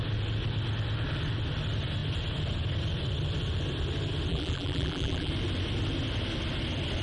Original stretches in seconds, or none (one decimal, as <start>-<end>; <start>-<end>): 0.0-4.3; 5.3-7.0

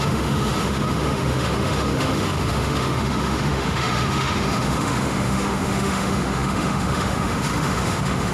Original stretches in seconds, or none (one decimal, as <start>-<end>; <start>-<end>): none

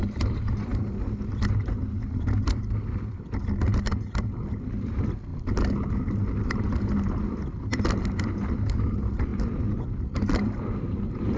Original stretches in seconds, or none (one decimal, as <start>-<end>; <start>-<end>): 0.0-9.3; 9.8-11.4

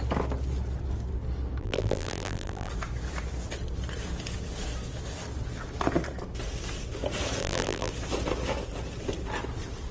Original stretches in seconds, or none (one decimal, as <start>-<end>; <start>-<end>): 0.0-1.6; 2.7-7.4; 7.9-9.9